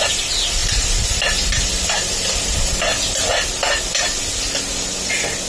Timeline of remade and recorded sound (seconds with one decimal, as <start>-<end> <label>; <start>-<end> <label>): 0.0-0.6 recorded; 0.6-3.9 remade; 3.9-5.5 recorded